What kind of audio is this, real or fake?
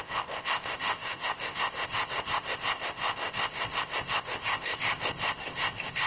fake